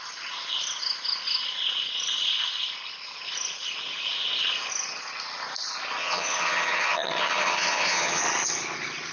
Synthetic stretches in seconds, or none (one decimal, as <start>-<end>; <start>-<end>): 6.0-8.2